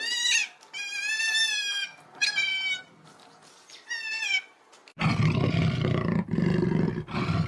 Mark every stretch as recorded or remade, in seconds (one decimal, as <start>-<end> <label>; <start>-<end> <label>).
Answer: 0.0-7.5 recorded